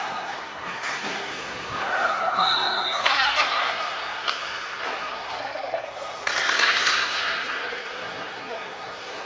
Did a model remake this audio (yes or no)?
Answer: yes